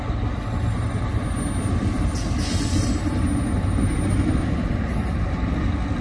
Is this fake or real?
real